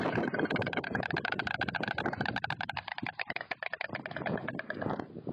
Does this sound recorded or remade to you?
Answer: remade